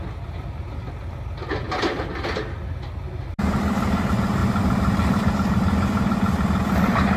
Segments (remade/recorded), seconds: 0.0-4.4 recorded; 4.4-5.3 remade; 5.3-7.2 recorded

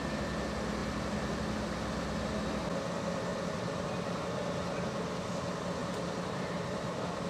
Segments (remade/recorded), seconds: 0.0-3.3 recorded; 3.3-3.9 remade; 3.9-5.8 recorded; 5.8-6.5 remade; 6.5-7.3 recorded